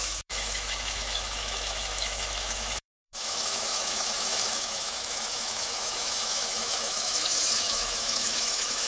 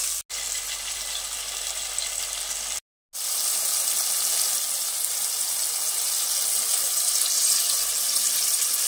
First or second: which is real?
second